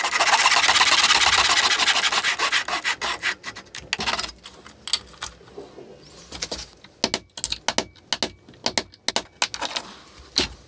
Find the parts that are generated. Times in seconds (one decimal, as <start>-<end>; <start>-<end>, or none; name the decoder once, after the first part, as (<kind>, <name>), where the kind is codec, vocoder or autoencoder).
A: none

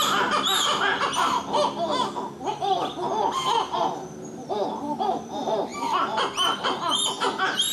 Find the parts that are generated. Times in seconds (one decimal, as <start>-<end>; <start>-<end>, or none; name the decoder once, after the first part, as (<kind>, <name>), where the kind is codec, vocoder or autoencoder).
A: 0.0-1.3 (vocoder, BigVGAN v2); 4.8-7.7

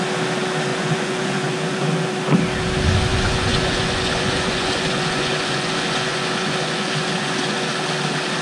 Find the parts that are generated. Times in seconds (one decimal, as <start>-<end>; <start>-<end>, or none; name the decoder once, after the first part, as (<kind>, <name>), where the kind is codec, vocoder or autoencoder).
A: 0.7-2.1 (vocoder, Vocos); 3.1-7.7